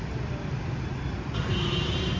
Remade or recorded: recorded